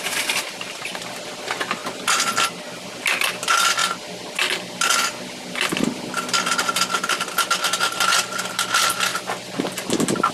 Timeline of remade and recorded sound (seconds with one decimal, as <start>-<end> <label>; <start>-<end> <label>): 0.0-1.8 remade; 1.8-3.2 recorded; 3.2-3.8 remade; 3.8-6.6 recorded; 6.6-10.3 remade